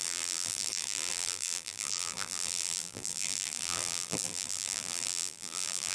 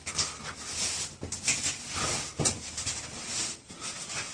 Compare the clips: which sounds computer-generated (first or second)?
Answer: first